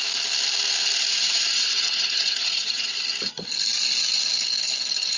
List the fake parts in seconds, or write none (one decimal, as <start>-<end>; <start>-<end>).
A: 1.2-3.0